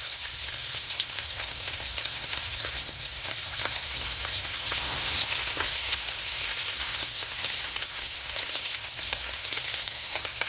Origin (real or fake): fake